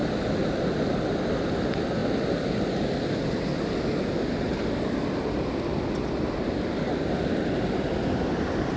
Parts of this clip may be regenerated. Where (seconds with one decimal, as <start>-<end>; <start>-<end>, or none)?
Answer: none